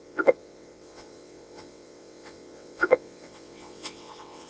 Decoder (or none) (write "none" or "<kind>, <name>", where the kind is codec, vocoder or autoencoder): vocoder, WaveNeXt